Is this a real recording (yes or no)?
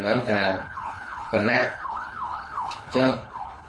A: no